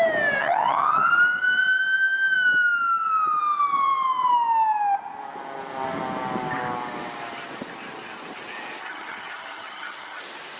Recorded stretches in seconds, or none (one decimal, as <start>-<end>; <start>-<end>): 0.0-0.4; 1.1-8.8; 10.2-10.6